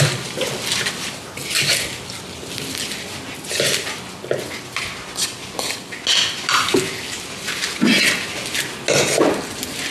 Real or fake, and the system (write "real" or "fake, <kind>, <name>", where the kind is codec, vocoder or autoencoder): real